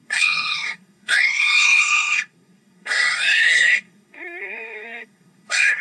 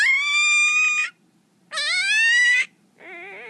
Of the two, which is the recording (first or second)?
second